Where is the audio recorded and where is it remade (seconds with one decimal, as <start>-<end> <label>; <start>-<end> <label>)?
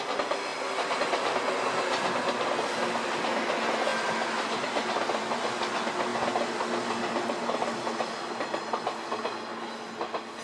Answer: 0.0-10.4 recorded